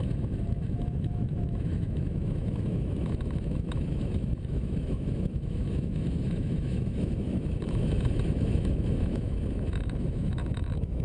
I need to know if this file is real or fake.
fake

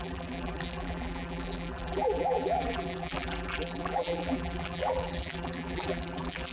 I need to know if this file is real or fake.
fake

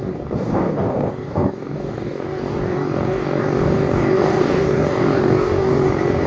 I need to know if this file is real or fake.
fake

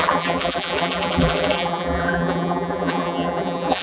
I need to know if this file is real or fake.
fake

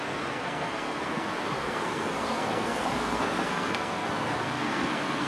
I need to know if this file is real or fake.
fake